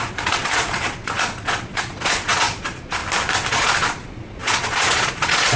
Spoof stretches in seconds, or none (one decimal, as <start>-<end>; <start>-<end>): 0.0-3.0; 3.5-5.6